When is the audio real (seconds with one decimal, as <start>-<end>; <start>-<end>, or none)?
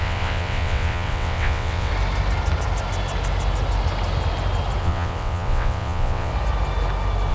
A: 1.9-4.8; 6.3-7.3